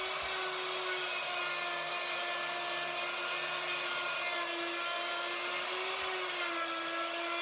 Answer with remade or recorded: recorded